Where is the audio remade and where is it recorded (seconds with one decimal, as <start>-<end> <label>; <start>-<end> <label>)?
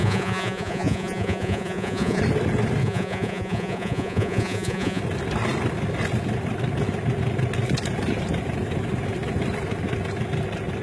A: 0.0-2.2 remade; 2.2-2.8 recorded; 2.8-5.0 remade; 5.0-10.8 recorded